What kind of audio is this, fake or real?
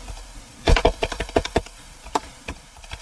fake